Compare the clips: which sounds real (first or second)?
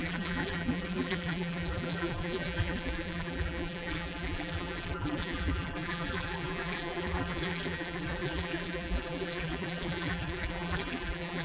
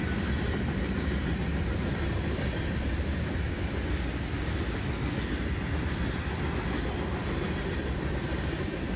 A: second